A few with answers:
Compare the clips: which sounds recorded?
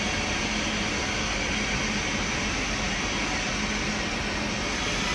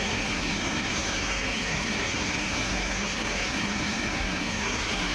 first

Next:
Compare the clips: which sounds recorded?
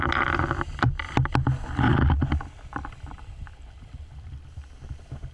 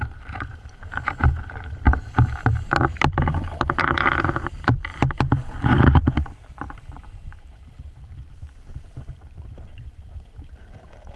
first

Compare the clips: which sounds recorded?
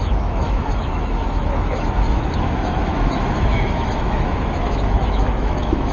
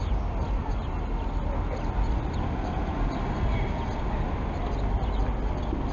second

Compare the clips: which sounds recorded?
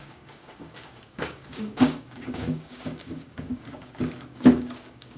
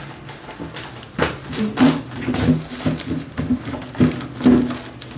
second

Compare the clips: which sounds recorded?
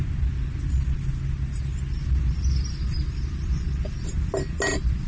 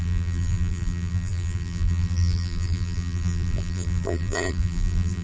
first